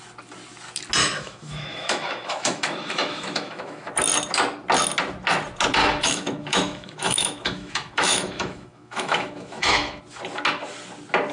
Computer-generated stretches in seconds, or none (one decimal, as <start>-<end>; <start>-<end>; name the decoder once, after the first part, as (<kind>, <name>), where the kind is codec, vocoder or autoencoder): 1.0-3.9 (autoencoder, DAC-VAE); 5.8-10.0